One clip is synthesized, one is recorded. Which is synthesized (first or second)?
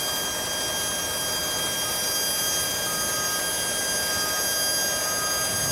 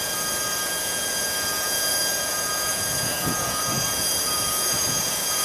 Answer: second